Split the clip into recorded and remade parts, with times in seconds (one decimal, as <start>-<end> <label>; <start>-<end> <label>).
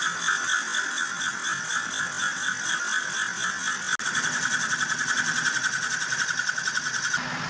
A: 0.0-7.5 recorded